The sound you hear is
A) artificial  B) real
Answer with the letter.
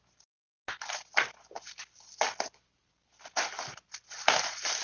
B